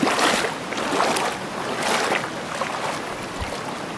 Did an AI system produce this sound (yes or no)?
no